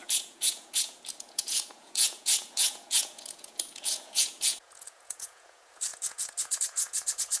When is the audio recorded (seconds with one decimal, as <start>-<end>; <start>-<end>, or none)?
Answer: none